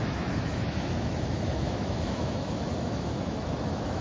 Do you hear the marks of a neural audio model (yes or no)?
yes